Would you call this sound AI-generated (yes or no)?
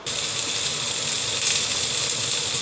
no